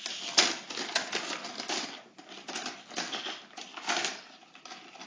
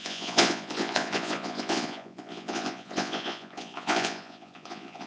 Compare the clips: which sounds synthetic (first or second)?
second